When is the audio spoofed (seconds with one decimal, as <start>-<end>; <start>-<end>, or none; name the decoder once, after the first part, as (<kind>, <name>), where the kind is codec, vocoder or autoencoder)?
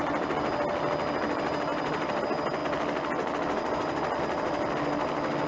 1.7-2.2 (vocoder, BigVGAN v2)